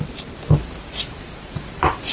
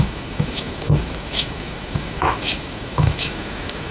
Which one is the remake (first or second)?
second